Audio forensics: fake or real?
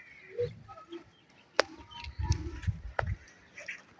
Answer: real